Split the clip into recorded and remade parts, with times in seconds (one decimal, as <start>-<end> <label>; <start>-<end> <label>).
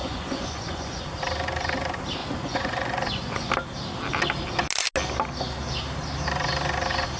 0.0-1.0 remade; 1.0-2.2 recorded; 2.2-3.5 remade; 3.5-7.2 recorded